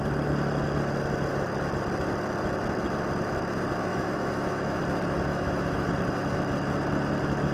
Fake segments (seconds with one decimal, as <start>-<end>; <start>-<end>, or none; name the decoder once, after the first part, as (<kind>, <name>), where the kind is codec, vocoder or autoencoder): 3.9-4.8 (autoencoder, DAC-VAE); 5.3-5.9